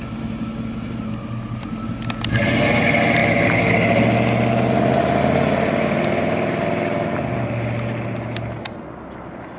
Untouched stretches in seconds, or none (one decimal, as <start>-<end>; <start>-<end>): 0.0-9.6